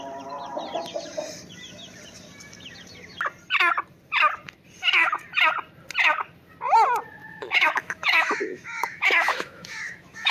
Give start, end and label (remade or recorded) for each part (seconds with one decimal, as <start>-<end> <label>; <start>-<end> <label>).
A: 0.0-7.2 recorded; 7.2-10.3 remade